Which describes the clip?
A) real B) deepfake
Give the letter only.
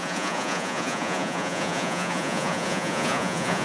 B